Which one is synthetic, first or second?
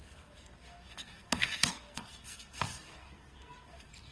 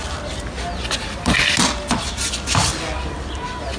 first